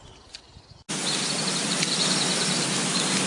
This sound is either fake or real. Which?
real